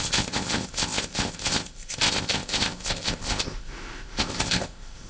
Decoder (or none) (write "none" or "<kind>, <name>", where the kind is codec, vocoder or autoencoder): codec, ZipCodec